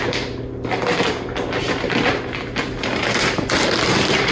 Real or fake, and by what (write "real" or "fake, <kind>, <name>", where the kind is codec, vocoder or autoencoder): real